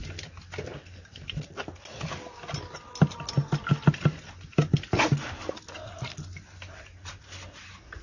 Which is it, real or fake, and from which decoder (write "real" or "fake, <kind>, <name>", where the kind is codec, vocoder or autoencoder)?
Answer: real